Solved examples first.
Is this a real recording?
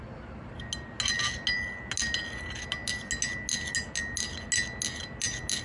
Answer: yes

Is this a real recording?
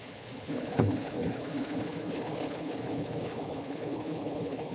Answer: no